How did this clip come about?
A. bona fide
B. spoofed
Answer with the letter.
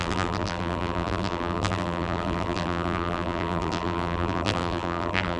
B